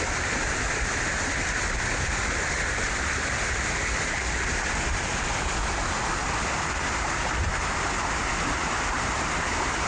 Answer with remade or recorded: recorded